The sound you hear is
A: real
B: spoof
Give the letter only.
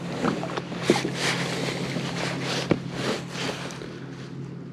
A